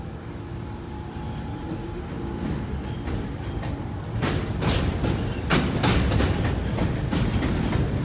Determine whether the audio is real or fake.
real